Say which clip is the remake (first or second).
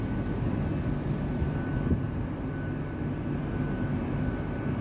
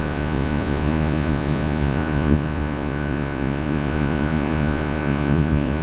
second